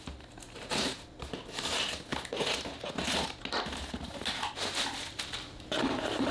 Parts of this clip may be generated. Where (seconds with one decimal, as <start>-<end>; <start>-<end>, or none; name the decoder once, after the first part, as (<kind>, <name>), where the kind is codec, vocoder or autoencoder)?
none